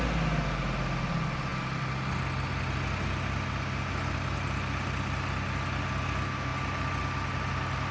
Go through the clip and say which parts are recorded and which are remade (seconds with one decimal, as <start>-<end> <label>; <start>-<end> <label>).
0.0-7.9 recorded